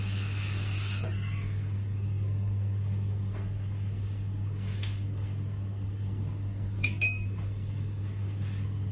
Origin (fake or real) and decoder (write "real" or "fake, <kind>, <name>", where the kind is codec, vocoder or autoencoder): fake, codec, SNAC